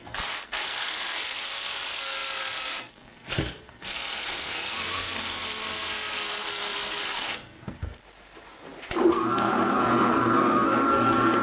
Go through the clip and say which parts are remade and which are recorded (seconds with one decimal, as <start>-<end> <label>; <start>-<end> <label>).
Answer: 0.0-8.0 remade; 8.0-9.1 recorded; 9.1-11.4 remade